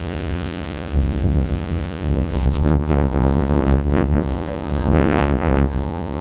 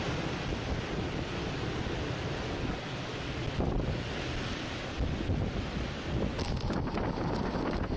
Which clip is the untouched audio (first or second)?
second